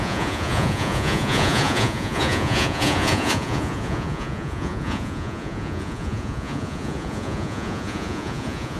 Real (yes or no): no